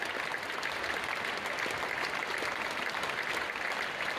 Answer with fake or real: real